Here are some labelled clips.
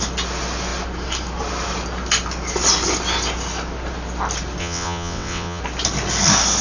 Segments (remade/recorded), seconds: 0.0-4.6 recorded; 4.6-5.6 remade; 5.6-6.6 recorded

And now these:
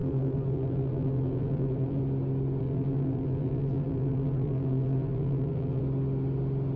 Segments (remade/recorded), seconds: 0.0-2.0 remade; 2.0-2.6 recorded; 2.6-5.8 remade; 5.8-6.8 recorded